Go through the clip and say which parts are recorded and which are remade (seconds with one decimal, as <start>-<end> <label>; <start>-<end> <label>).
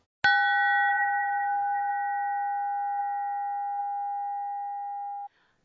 0.0-0.9 recorded; 0.9-1.9 remade; 1.9-5.6 recorded